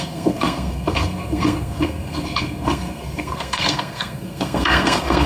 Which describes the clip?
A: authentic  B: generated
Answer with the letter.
B